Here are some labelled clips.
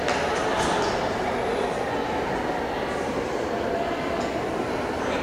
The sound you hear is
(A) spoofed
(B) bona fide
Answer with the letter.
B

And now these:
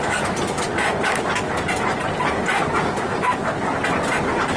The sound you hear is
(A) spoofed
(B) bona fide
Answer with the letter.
B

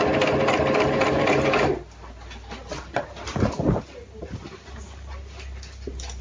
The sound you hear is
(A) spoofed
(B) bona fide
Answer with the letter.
B